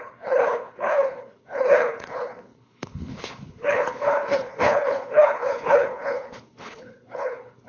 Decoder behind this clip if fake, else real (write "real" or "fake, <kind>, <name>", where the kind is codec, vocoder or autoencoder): fake, codec, HILCodec